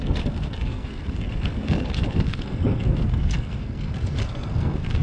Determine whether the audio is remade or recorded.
remade